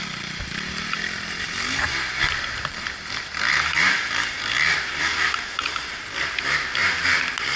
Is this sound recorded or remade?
remade